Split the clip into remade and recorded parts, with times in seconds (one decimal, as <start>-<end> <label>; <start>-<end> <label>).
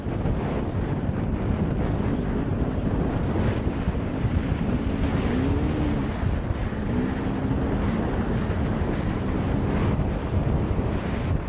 0.0-2.5 recorded; 2.5-4.7 remade; 4.7-6.6 recorded; 6.6-7.4 remade; 7.4-11.5 recorded